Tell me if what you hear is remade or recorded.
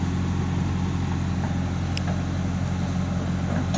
recorded